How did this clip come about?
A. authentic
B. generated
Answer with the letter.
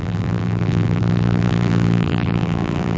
B